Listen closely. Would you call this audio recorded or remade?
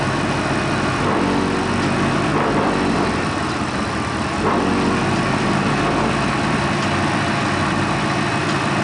recorded